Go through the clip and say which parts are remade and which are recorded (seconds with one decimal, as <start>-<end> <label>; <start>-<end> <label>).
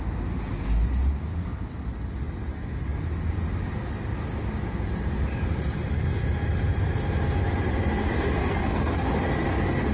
0.0-8.4 recorded; 8.4-9.1 remade; 9.1-9.9 recorded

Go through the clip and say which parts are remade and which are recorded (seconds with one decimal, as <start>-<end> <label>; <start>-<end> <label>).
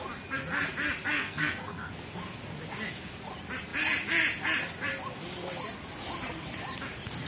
0.0-1.1 recorded; 1.1-1.9 remade; 1.9-7.3 recorded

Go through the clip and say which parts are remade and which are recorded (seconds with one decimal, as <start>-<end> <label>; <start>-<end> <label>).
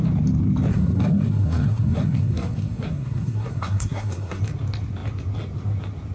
0.0-0.7 recorded; 0.7-4.4 remade; 4.4-6.1 recorded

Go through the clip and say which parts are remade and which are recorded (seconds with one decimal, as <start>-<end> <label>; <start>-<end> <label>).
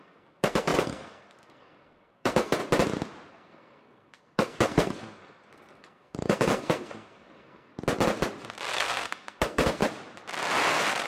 0.0-2.6 remade; 2.6-3.3 recorded; 3.3-7.7 remade; 7.7-8.7 recorded; 8.7-9.8 remade; 9.8-10.7 recorded; 10.7-11.1 remade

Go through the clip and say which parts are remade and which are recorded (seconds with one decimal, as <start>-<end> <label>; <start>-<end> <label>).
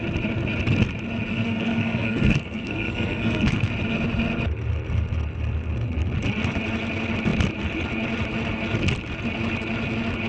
0.0-1.3 recorded; 1.3-3.7 remade; 3.7-10.3 recorded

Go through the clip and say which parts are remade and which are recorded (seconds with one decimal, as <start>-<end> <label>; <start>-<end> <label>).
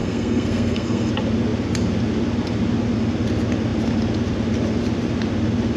0.0-1.1 remade; 1.1-5.8 recorded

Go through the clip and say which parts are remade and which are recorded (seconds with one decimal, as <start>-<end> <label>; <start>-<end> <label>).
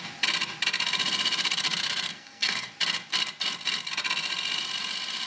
0.0-2.1 recorded; 2.1-2.7 remade; 2.7-5.3 recorded